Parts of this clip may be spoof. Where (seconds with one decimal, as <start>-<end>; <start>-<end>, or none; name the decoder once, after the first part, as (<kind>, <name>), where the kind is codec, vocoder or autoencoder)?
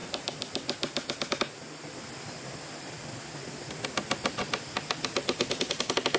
none